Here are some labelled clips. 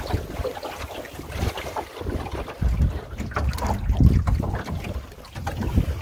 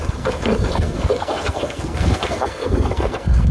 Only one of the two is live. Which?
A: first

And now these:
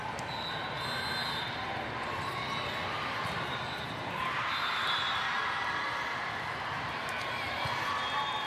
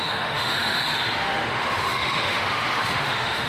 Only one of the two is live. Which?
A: first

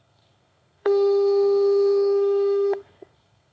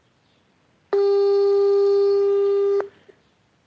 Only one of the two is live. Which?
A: second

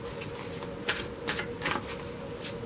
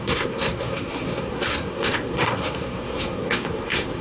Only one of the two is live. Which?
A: first